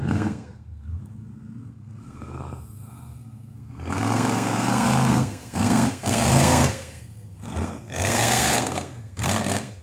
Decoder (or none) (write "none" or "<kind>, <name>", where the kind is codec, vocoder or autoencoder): codec, SNAC